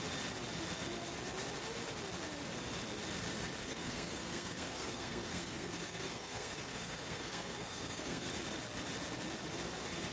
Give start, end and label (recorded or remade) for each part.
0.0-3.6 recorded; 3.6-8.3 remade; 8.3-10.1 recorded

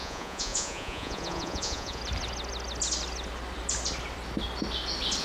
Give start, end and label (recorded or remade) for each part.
0.0-2.0 remade; 2.0-5.2 recorded

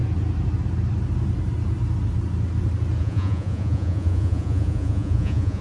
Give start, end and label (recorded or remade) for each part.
0.0-3.0 recorded; 3.0-5.6 remade

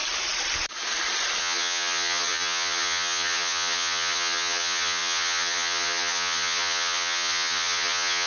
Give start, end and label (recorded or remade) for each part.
0.0-1.4 recorded; 1.4-8.3 remade

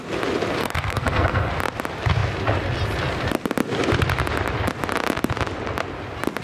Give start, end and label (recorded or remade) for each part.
0.0-0.6 recorded; 0.6-1.5 remade; 1.5-6.4 recorded

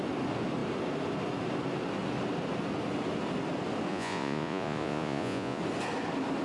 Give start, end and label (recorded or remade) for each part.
0.0-3.9 recorded; 3.9-5.6 remade; 5.6-6.4 recorded